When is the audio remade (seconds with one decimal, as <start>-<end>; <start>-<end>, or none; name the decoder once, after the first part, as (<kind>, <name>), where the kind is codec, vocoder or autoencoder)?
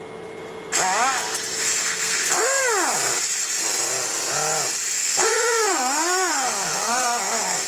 1.8-2.6 (codec, SNAC); 5.0-7.7